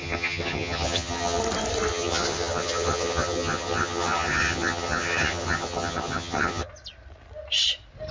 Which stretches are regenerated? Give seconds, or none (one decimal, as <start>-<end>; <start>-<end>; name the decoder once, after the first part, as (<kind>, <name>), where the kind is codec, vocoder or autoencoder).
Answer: 0.0-1.4 (vocoder, HiFi-GAN); 1.9-6.7